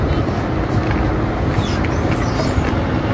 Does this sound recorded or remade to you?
recorded